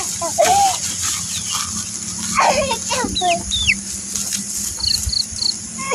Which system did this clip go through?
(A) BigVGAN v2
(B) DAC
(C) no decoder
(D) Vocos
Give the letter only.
C